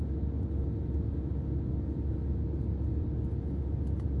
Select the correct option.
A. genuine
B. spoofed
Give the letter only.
A